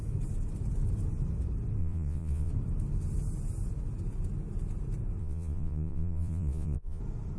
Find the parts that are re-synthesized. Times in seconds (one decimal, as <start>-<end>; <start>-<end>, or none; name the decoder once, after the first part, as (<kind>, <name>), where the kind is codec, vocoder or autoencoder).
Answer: 1.8-2.5 (vocoder, Vocos); 5.2-7.0